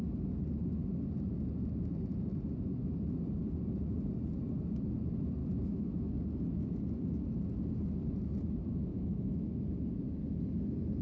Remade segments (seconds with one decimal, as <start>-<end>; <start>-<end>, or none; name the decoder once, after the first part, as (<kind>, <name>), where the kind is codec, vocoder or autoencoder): 5.4-6.1 (autoencoder, DAC-VAE); 8.9-9.6